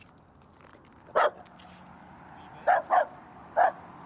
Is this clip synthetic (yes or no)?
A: no